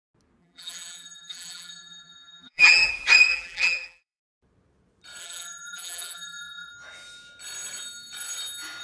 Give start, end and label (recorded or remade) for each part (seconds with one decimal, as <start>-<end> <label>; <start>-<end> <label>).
0.0-0.4 recorded; 0.4-2.9 remade; 2.9-3.3 recorded; 3.3-4.2 remade; 4.2-5.2 recorded; 5.2-6.7 remade; 6.7-8.8 recorded